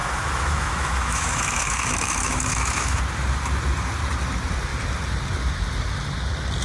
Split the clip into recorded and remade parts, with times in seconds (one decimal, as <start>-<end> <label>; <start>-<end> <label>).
0.0-3.0 remade; 3.0-6.6 recorded